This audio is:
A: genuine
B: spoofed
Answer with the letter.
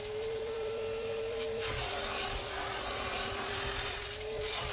B